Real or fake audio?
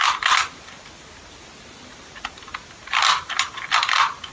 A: real